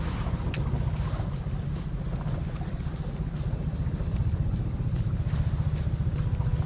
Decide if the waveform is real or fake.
real